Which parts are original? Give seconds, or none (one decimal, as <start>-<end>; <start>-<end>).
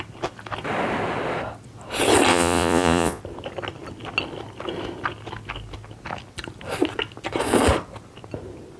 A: 0.0-2.3; 3.2-8.8